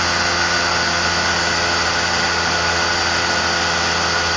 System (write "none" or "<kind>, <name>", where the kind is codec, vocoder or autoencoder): none